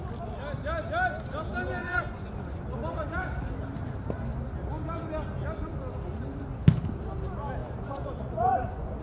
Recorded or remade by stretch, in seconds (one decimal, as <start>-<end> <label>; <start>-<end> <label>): 0.0-1.8 recorded; 1.8-2.6 remade; 2.6-7.6 recorded; 7.6-9.0 remade